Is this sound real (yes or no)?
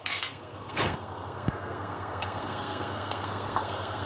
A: no